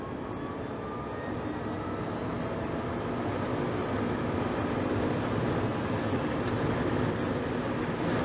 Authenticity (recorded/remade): recorded